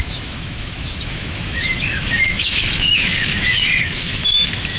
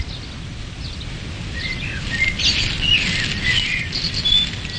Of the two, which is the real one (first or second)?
second